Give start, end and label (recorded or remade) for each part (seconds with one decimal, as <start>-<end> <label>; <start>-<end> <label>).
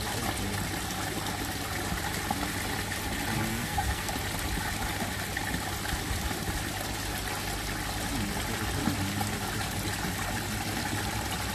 0.0-3.5 recorded; 3.5-4.1 remade; 4.1-11.5 recorded